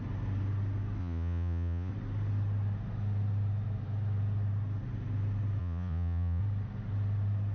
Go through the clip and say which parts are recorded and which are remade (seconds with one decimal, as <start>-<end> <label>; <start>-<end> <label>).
0.0-1.0 recorded; 1.0-1.9 remade; 1.9-5.6 recorded; 5.6-6.4 remade; 6.4-7.5 recorded